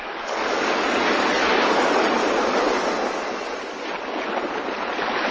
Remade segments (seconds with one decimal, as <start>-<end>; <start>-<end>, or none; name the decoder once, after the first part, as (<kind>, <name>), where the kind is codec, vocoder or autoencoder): 0.0-2.2 (codec, DAC)

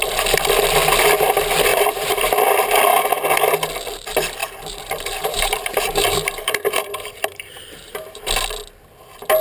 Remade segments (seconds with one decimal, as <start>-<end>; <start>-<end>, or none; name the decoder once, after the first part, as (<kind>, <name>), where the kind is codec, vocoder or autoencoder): 1.7-2.3 (vocoder, BigVGAN v2); 4.4-8.2

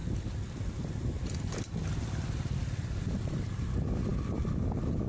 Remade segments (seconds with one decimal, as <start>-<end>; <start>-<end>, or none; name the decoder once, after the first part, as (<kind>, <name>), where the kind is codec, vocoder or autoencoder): none

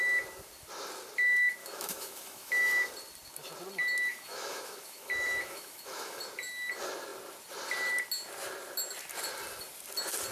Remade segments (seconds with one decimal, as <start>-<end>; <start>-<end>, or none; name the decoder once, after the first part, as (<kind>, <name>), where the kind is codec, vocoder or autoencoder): 1.6-2.9 (autoencoder, DAC-VAE); 4.1-6.2

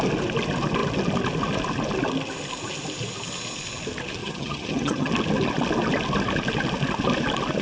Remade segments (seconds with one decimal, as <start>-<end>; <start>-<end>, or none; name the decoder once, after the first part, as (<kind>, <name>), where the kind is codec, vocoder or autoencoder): 4.2-5.1 (vocoder, HiFi-GAN)

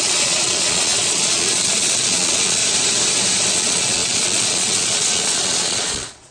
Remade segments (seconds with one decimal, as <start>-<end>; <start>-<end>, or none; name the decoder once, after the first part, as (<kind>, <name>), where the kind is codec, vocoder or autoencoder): 0.0-2.6 (vocoder, Vocos); 3.5-6.3

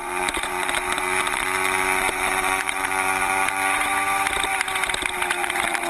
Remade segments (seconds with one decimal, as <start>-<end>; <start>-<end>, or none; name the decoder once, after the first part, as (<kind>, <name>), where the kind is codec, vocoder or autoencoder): 0.0-3.9 (vocoder, Vocos); 5.3-5.9